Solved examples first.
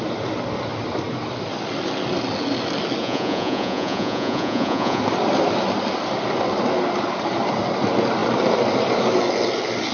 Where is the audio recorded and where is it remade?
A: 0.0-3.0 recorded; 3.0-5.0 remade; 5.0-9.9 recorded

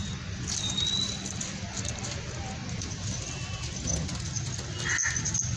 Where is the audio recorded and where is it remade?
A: 0.0-3.4 remade; 3.4-5.6 recorded

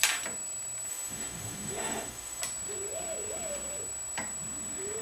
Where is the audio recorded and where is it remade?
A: 0.0-0.9 recorded; 0.9-2.4 remade; 2.4-5.0 recorded

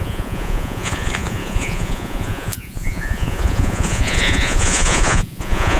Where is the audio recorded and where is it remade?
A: 0.0-5.8 remade

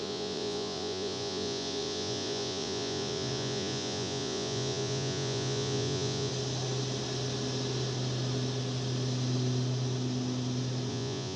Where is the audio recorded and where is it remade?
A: 0.0-6.3 remade; 6.3-10.9 recorded; 10.9-11.4 remade

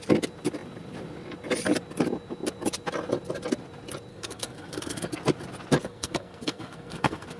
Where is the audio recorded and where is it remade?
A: 0.0-4.1 recorded; 4.1-5.1 remade; 5.1-5.8 recorded; 5.8-7.4 remade